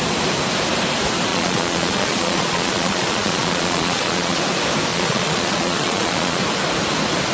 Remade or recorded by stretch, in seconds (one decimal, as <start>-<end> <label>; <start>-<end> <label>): 0.0-1.3 recorded; 1.3-4.4 remade; 4.4-4.9 recorded; 4.9-6.4 remade; 6.4-7.3 recorded